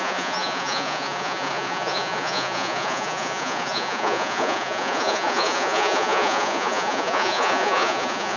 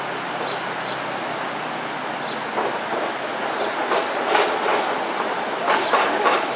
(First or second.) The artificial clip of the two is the first